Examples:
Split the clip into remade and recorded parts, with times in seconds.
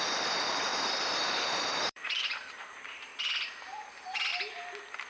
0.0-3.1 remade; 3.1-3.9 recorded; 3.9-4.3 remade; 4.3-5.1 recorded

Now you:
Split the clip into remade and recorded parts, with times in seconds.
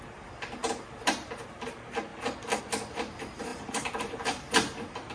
0.0-0.6 recorded; 0.6-1.4 remade; 1.4-2.1 recorded; 2.1-2.6 remade; 2.6-3.5 recorded; 3.5-5.1 remade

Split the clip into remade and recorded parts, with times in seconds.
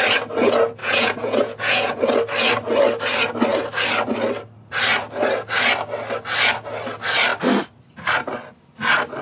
0.0-0.8 recorded; 0.8-2.0 remade; 2.0-9.2 recorded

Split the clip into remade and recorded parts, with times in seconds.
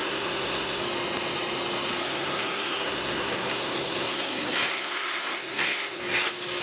0.0-0.8 remade; 0.8-2.0 recorded; 2.0-6.0 remade; 6.0-6.6 recorded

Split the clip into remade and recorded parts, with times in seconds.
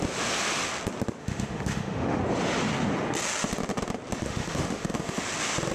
0.0-1.2 recorded; 1.2-2.2 remade; 2.2-4.2 recorded; 4.2-5.2 remade; 5.2-5.7 recorded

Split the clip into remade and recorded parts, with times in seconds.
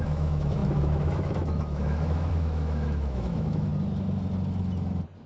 0.0-3.7 remade; 3.7-5.3 recorded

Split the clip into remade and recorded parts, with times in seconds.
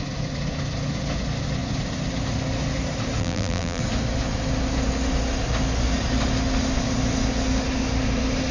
0.0-3.2 recorded; 3.2-3.8 remade; 3.8-8.5 recorded